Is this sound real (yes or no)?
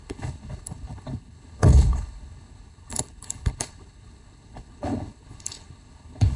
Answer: no